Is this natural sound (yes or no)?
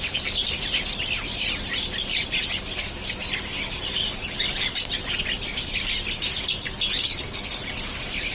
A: yes